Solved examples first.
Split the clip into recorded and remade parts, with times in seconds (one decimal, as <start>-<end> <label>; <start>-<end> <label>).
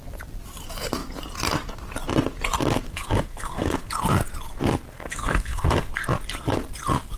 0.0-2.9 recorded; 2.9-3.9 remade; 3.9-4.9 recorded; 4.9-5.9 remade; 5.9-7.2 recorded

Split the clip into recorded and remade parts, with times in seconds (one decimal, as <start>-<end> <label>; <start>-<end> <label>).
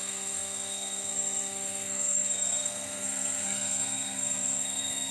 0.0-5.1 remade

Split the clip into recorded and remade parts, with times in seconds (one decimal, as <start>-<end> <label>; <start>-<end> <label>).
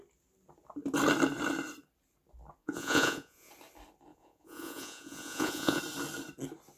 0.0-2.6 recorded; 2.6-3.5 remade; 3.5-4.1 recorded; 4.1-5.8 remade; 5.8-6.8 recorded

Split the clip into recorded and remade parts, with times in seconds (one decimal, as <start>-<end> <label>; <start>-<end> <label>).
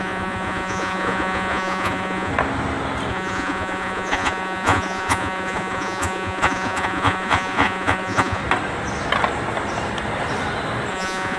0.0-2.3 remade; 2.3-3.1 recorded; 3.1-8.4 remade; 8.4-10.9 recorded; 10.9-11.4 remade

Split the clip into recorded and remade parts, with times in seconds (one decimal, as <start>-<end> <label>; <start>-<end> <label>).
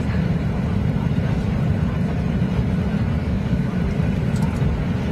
0.0-3.2 recorded; 3.2-3.7 remade; 3.7-5.1 recorded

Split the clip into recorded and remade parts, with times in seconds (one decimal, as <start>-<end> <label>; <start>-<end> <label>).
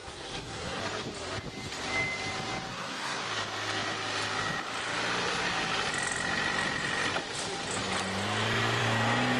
0.0-0.8 remade; 0.8-2.7 recorded; 2.7-3.2 remade; 3.2-9.4 recorded